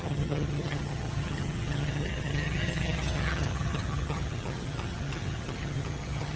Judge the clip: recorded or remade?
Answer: remade